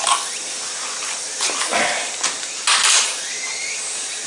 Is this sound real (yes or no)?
no